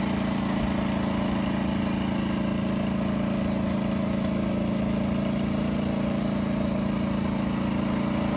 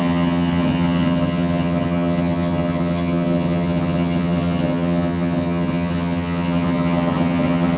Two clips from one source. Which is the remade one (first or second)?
second